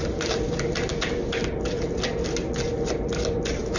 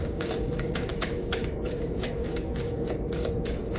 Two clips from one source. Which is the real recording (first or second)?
first